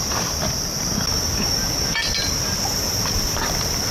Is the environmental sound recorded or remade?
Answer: remade